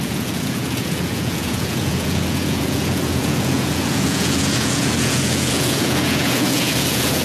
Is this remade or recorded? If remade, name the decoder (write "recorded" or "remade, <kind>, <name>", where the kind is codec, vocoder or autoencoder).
remade, vocoder, Vocos